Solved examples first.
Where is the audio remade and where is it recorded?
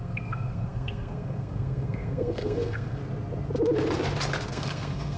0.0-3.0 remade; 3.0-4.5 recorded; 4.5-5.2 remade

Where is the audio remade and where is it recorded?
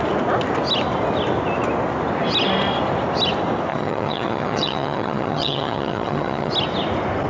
0.0-3.7 recorded; 3.7-6.5 remade; 6.5-7.3 recorded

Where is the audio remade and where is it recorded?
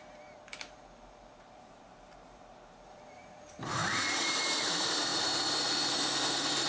0.0-6.7 remade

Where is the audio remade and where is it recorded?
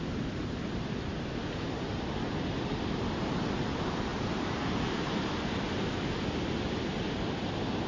0.0-4.1 recorded; 4.1-5.3 remade; 5.3-7.9 recorded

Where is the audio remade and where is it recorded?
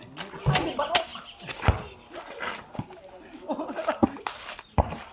0.0-5.1 recorded